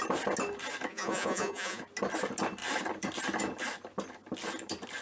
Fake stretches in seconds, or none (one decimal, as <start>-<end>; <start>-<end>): 0.9-1.8